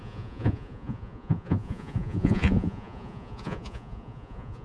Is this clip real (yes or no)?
no